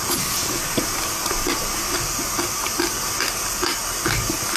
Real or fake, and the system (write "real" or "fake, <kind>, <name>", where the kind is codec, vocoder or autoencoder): real